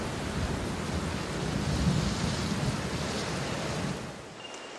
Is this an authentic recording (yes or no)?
yes